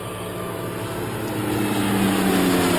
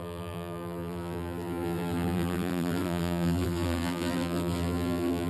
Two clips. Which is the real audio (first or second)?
first